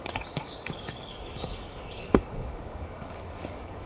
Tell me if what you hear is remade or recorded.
remade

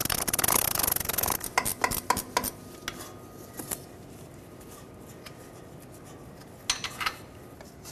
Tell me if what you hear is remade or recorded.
recorded